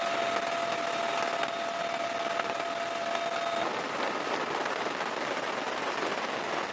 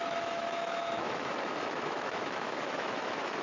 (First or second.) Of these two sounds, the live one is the first